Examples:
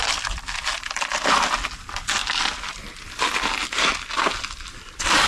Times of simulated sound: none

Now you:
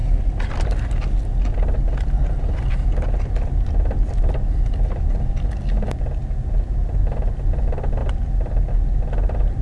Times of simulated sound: none

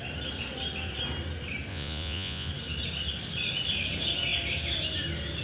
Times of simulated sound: 1.7-2.5 (vocoder, Vocos)

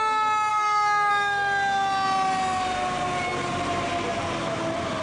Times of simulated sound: 0.5-1.1 (codec, SNAC)

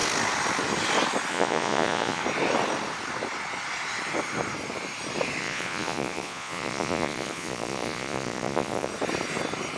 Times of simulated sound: 1.3-2.2 (vocoder, Vocos); 5.4-8.9

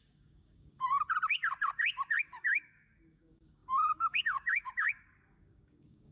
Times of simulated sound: 0.0-0.9 (codec, DAC); 2.2-6.1

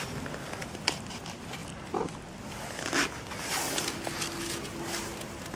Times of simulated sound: none